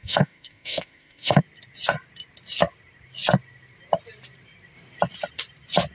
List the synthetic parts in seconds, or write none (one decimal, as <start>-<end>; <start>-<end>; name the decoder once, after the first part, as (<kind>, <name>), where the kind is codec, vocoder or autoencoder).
0.0-1.4 (autoencoder, DAC-VAE)